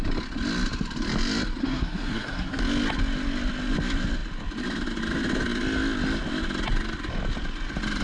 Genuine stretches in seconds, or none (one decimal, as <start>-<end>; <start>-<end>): 0.0-1.6; 2.6-8.0